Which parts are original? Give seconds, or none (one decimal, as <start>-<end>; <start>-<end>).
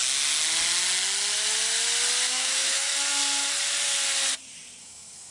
0.0-2.3; 2.9-4.8